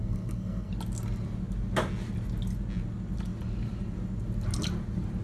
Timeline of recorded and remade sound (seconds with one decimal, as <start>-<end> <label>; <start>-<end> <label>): 0.0-0.7 remade; 0.7-5.2 recorded